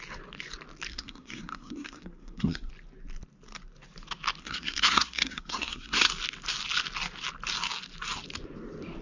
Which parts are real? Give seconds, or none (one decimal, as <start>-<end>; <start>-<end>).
0.0-0.9; 2.7-4.4; 6.1-9.0